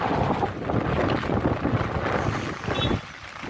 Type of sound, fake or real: real